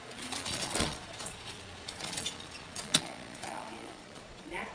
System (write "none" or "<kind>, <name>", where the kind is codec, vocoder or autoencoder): vocoder, Vocos